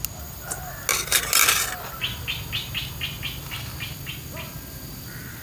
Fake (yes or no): no